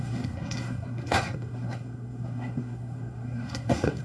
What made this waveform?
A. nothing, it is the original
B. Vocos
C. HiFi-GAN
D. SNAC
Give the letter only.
D